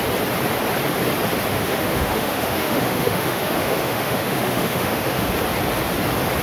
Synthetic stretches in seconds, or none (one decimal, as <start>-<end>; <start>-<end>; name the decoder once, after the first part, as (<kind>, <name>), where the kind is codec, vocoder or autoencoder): 1.5-5.3 (autoencoder, DAC-VAE)